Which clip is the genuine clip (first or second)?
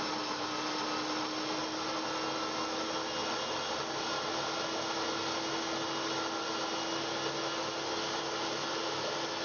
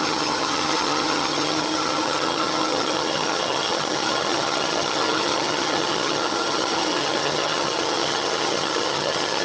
first